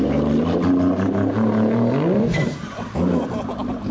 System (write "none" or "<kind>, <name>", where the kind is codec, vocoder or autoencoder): none